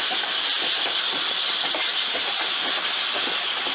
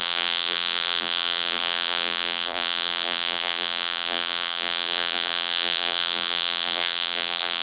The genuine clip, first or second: first